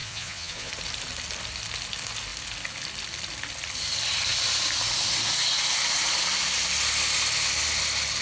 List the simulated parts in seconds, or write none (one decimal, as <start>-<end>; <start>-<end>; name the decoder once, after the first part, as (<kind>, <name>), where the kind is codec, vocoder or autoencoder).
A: 0.0-0.7 (vocoder, Vocos)